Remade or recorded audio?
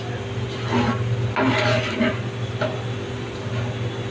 recorded